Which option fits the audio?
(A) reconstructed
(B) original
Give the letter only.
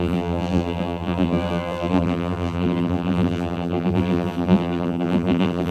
A